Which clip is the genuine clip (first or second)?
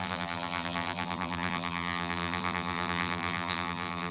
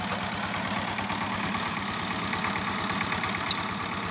second